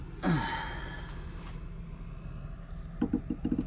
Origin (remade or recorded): recorded